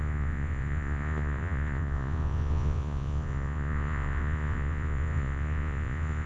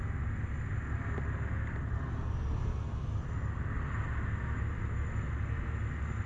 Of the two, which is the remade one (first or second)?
first